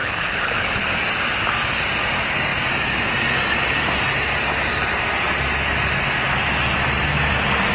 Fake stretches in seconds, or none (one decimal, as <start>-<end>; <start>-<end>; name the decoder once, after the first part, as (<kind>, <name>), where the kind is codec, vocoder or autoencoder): 0.0-0.9 (codec, HILCodec)